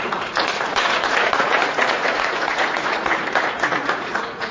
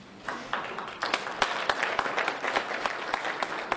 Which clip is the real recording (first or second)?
second